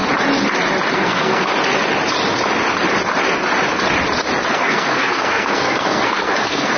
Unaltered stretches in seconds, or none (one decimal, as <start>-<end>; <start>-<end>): 0.0-0.9; 1.5-4.5